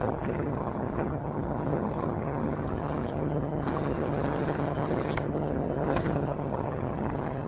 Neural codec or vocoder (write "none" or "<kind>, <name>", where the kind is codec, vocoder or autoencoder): vocoder, HiFi-GAN